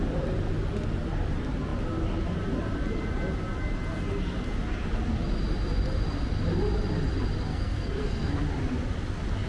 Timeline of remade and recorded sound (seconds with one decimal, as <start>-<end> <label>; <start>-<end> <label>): 0.0-7.5 recorded; 7.5-8.3 remade; 8.3-9.5 recorded